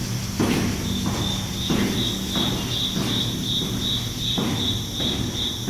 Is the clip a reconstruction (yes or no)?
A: no